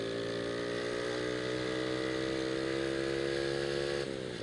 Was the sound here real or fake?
real